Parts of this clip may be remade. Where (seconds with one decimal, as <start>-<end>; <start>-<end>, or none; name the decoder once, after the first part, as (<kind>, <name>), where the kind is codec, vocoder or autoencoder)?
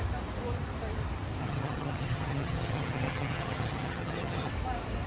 1.4-4.5 (vocoder, HiFi-GAN)